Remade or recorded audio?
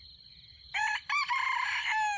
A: recorded